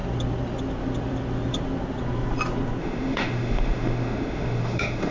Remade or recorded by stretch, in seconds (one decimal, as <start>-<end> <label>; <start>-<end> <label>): 0.0-2.8 recorded; 2.8-5.1 remade